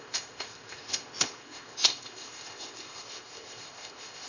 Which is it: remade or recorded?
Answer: remade